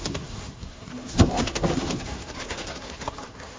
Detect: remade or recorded remade